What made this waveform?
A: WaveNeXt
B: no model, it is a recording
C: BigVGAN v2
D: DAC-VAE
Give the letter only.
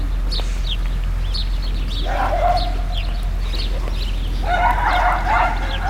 B